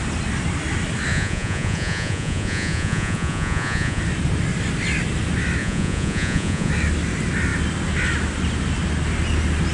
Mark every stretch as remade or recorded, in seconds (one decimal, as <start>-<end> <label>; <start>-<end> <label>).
0.0-1.1 recorded; 1.1-4.0 remade; 4.0-5.6 recorded; 5.6-6.7 remade; 6.7-9.7 recorded